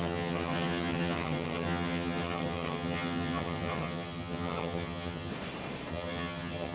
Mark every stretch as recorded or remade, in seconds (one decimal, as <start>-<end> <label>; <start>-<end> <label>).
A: 0.0-5.3 remade; 5.3-5.9 recorded; 5.9-6.7 remade